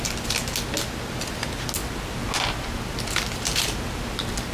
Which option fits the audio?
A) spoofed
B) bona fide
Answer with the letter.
B